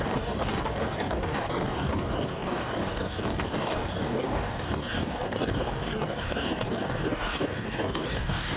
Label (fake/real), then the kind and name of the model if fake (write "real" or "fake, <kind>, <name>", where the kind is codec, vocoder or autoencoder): fake, codec, DAC